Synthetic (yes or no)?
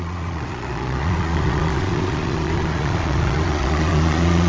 yes